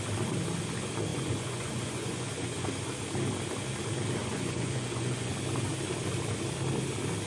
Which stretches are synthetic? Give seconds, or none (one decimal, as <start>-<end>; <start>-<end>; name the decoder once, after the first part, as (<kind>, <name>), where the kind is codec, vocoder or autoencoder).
1.1-2.7 (vocoder, Vocos); 4.2-5.3